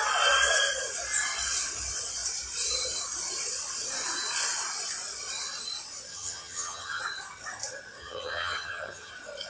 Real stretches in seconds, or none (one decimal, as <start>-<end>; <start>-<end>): 0.0-6.1; 7.0-8.0; 9.1-9.5